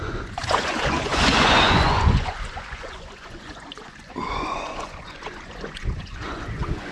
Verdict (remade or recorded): remade